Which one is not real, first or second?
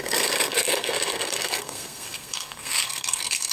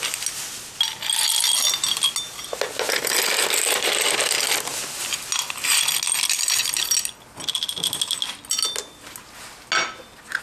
first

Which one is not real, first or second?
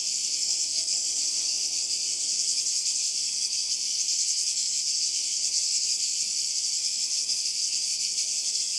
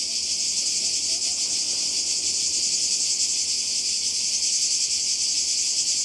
first